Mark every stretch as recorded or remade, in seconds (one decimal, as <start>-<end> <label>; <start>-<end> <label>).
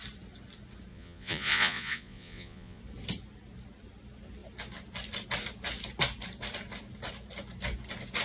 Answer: 0.0-0.9 recorded; 0.9-2.8 remade; 2.8-8.2 recorded